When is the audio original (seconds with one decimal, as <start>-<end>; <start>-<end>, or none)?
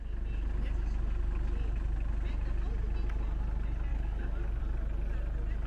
0.0-3.9; 4.6-5.7